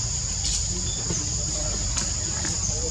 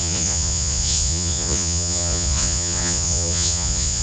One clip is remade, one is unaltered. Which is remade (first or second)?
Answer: second